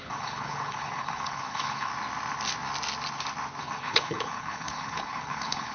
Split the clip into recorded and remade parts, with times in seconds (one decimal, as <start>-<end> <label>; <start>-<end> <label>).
0.0-1.9 remade; 1.9-3.6 recorded; 3.6-5.7 remade

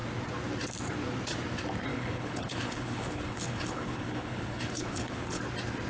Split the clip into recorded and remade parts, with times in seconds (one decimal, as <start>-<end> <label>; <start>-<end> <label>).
0.0-1.9 recorded; 1.9-5.4 remade; 5.4-5.9 recorded